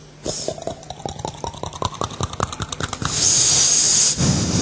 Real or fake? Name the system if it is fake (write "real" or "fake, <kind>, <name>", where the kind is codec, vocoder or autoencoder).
real